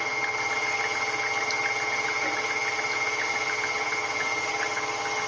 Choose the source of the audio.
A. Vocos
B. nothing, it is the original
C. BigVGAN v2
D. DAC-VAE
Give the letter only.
B